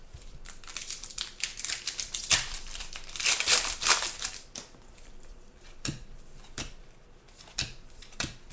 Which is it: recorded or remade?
remade